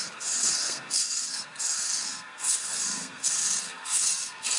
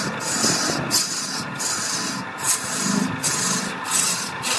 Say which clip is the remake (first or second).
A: first